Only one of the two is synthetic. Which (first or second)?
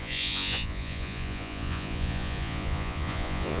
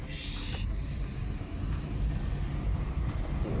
first